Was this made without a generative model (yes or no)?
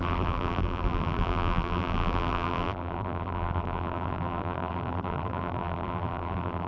no